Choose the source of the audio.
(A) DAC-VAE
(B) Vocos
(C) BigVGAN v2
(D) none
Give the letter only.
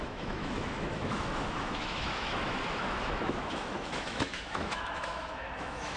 A